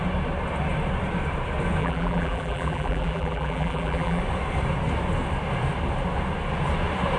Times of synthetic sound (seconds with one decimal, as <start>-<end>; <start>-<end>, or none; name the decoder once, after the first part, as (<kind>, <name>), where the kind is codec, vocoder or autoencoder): 1.8-4.2 (vocoder, BigVGAN v2)